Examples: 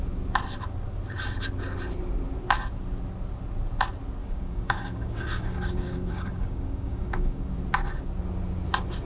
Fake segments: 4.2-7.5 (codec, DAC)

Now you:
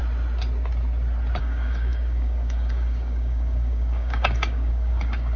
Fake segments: 1.4-5.4 (codec, DAC)